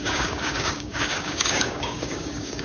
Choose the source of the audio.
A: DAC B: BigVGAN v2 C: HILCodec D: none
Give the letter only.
A